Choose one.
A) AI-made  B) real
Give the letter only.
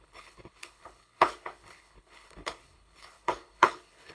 A